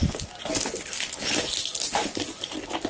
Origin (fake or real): real